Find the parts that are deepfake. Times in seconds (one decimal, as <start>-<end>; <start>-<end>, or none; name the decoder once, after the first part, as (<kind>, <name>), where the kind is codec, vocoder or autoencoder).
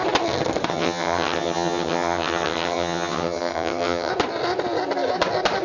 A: 0.7-4.1 (vocoder, HiFi-GAN)